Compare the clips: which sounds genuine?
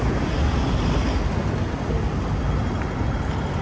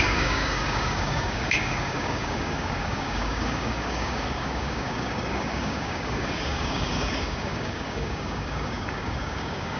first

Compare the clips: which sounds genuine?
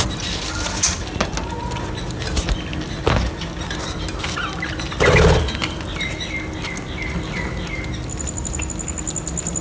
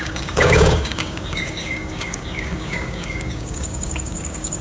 first